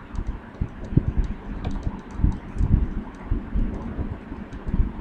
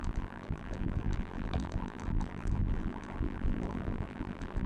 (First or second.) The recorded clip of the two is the first